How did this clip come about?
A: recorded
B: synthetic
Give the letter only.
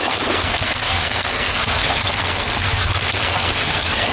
B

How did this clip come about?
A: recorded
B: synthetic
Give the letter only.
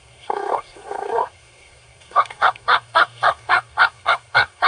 B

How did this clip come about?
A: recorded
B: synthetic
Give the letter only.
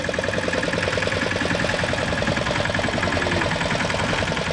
A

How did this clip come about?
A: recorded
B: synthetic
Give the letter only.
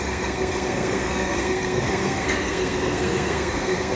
B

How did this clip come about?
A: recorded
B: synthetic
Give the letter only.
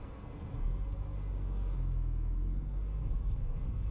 B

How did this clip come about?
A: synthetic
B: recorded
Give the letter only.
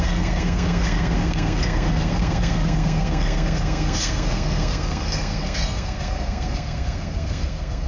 A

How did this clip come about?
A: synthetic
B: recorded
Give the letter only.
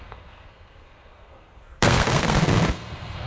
A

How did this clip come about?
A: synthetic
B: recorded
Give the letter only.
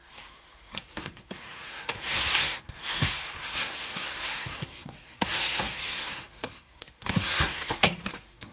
A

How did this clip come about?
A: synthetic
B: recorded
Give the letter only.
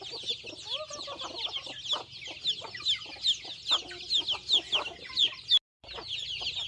B